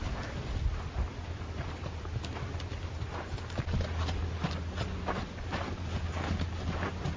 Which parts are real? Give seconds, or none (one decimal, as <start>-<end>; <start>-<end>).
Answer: 0.0-7.2